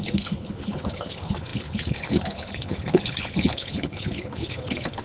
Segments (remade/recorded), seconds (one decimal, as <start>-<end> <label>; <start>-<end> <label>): 0.0-5.0 remade